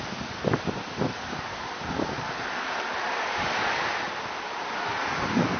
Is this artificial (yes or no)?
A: no